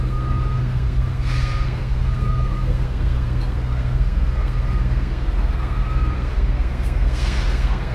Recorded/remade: remade